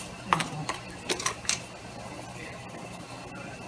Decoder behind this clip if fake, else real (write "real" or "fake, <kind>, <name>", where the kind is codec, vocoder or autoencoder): real